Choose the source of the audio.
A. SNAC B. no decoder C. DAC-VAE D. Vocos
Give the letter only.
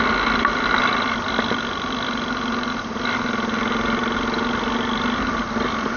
B